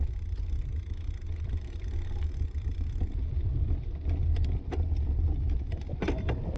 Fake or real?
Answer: real